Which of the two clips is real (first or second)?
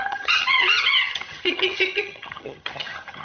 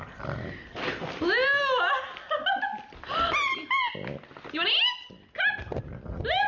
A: second